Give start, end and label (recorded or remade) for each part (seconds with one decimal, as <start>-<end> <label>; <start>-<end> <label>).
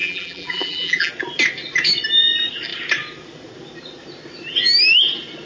0.0-1.1 remade; 1.1-5.5 recorded